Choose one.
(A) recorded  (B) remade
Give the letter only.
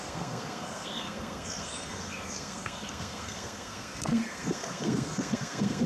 B